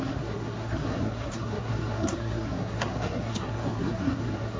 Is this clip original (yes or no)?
no